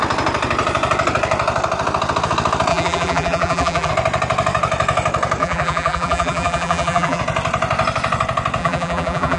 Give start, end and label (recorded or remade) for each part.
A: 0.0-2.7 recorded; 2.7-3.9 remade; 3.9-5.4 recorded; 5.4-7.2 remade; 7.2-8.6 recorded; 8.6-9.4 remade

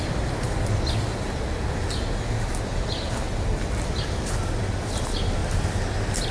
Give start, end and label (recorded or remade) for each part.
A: 0.0-1.1 remade; 1.1-4.8 recorded; 4.8-5.4 remade; 5.4-6.3 recorded

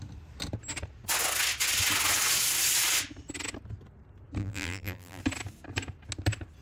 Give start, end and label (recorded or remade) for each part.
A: 0.0-4.4 recorded; 4.4-5.2 remade; 5.2-6.6 recorded

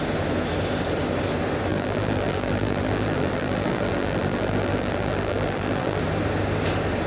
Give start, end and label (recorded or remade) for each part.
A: 0.0-1.7 recorded; 1.7-6.0 remade; 6.0-7.1 recorded

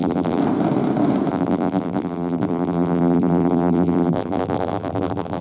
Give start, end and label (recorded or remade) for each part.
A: 0.0-0.4 remade; 0.4-1.3 recorded; 1.3-5.4 remade

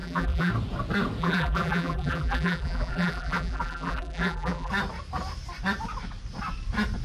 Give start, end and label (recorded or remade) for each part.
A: 0.0-0.5 remade; 0.5-1.2 recorded; 1.2-4.7 remade; 4.7-7.0 recorded